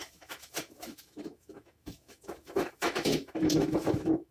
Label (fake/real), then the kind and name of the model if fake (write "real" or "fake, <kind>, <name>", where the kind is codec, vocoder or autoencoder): fake, autoencoder, DAC-VAE